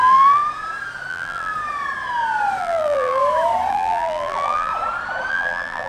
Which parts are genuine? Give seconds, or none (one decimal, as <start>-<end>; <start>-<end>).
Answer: 0.4-1.1; 1.5-2.6; 3.2-3.7; 4.7-5.3